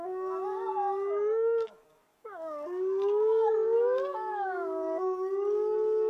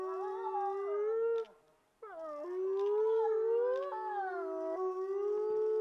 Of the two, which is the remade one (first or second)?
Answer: first